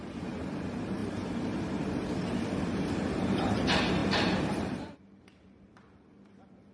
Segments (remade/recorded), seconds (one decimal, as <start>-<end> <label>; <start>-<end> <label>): 0.0-6.7 remade